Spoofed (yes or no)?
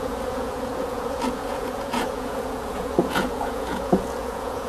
yes